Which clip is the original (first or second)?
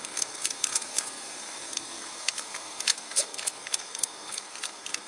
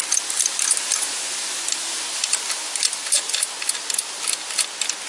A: second